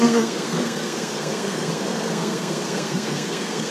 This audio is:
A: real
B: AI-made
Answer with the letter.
B